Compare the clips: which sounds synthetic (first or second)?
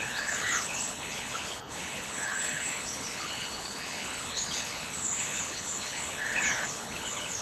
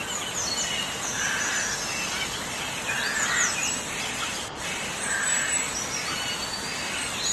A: first